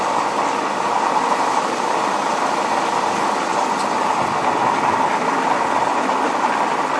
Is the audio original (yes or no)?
yes